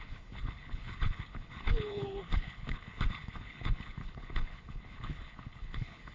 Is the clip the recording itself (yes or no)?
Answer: no